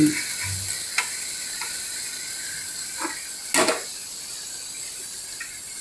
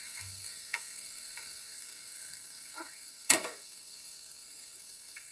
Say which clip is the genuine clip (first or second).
first